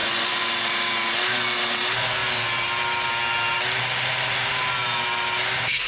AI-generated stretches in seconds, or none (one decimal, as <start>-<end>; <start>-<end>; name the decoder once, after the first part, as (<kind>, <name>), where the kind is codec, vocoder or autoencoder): 0.0-0.5 (vocoder, Vocos)